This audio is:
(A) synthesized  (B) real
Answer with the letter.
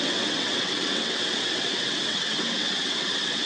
A